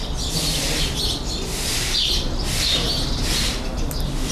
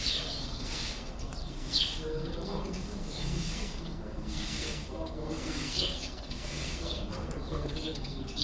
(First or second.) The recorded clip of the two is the first